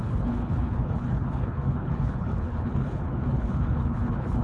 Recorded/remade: remade